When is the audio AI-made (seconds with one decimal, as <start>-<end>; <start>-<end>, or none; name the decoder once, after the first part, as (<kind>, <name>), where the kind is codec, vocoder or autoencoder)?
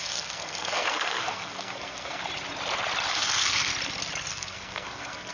0.0-2.2 (codec, SNAC); 3.1-3.7; 4.3-5.3